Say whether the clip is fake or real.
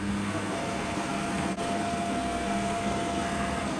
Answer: fake